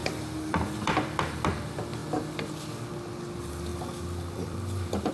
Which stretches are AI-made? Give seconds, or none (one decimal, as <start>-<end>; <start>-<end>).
0.0-1.2; 3.7-5.1